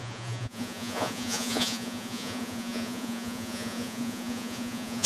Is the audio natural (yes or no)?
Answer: no